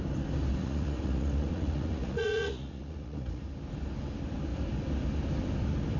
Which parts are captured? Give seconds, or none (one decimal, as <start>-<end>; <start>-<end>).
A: 0.0-0.6; 3.4-6.0